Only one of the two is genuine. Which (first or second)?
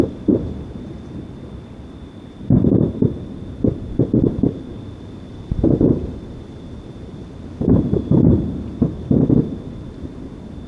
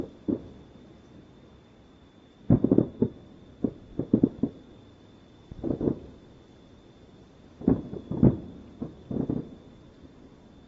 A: second